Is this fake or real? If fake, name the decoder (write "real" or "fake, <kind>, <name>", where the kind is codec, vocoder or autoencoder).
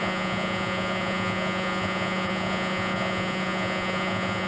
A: fake, vocoder, Vocos